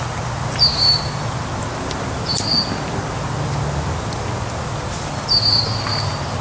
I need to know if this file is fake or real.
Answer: real